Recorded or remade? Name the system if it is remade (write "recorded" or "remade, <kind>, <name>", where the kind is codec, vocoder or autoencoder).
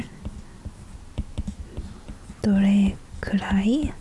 recorded